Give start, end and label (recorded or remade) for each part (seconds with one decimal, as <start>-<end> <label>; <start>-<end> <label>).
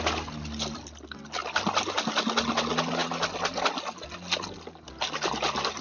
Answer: 0.0-5.8 recorded